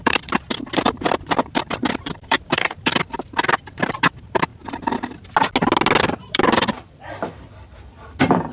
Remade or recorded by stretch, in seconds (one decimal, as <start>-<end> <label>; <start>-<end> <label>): 0.0-2.9 remade; 2.9-3.8 recorded; 3.8-4.5 remade; 4.5-6.0 recorded; 6.0-8.5 remade